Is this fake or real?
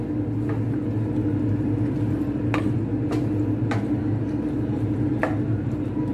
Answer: real